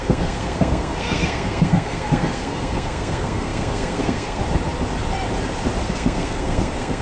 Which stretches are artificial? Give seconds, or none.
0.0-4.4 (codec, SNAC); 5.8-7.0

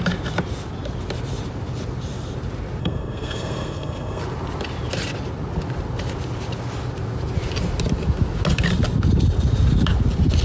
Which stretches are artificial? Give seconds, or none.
2.8-4.2 (codec, SNAC)

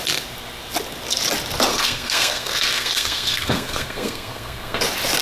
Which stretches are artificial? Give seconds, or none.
1.7-4.8 (codec, SNAC)

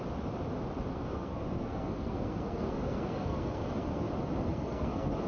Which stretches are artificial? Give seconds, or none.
0.9-4.1 (codec, SNAC); 4.5-5.3

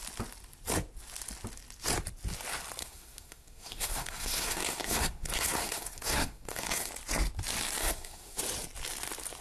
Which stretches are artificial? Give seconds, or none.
2.8-6.9 (codec, SNAC); 7.8-8.4

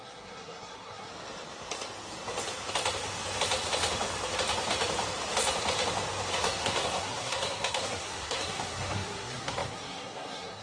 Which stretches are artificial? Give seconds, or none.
0.0-1.1 (codec, SNAC); 6.3-10.6

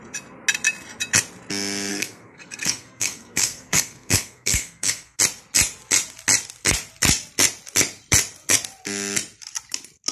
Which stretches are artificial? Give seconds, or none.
1.9-5.2 (codec, SNAC)

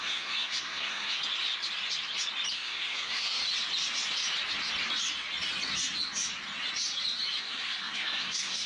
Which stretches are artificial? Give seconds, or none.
0.0-1.2 (codec, SNAC); 2.5-3.4; 7.4-8.7